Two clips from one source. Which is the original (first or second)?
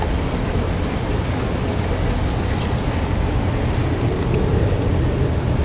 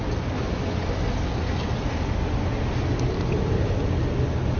second